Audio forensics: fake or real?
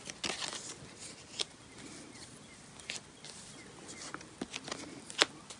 real